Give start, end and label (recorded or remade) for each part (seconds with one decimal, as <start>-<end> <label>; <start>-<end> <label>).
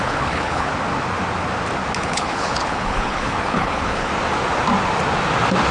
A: 0.0-0.7 remade; 0.7-2.0 recorded; 2.0-4.1 remade; 4.1-5.7 recorded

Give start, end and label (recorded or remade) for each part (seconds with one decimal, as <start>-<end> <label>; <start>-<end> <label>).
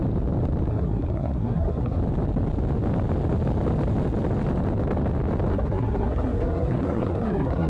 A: 0.0-0.7 recorded; 0.7-2.0 remade; 2.0-5.5 recorded; 5.5-7.7 remade